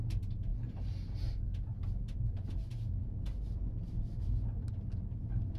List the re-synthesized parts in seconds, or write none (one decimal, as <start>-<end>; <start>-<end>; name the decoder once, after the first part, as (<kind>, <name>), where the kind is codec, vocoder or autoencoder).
none